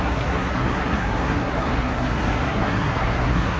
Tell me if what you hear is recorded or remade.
remade